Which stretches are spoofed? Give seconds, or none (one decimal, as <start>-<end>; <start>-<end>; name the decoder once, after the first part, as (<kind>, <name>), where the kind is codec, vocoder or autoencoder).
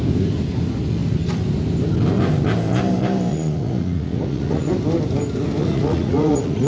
3.3-4.7 (vocoder, Vocos); 5.6-6.7